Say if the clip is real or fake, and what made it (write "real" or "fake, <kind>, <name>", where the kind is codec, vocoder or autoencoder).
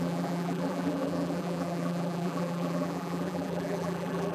fake, vocoder, BigVGAN v2